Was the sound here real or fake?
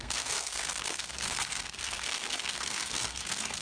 fake